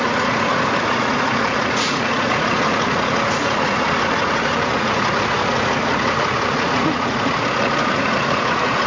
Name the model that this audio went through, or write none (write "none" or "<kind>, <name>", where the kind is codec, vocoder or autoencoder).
vocoder, Vocos